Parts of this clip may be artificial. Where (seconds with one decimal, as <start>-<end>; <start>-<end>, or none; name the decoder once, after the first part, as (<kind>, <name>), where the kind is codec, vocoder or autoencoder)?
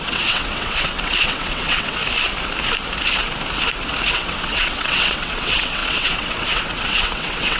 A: 0.0-2.0 (vocoder, WaveNeXt); 4.1-7.6